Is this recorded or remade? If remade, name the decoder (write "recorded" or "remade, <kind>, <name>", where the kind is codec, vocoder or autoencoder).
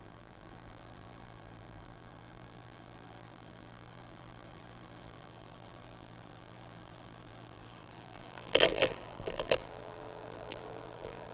remade, vocoder, BigVGAN v2